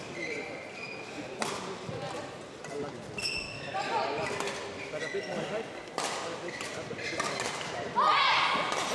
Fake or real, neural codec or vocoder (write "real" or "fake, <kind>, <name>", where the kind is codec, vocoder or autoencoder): real